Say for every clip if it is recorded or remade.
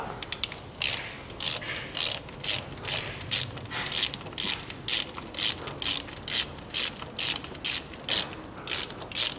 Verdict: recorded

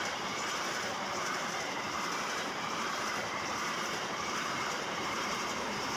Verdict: remade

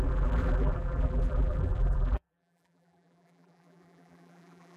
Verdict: remade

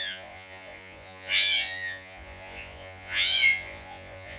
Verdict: remade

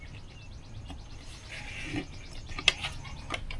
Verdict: recorded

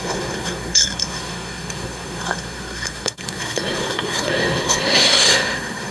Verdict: remade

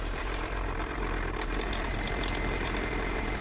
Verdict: remade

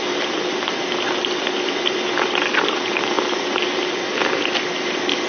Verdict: remade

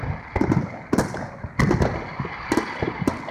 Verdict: recorded